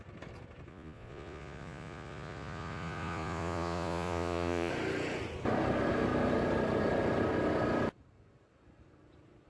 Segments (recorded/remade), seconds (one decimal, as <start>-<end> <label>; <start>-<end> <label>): 0.0-0.7 recorded; 0.7-4.7 remade; 4.7-9.5 recorded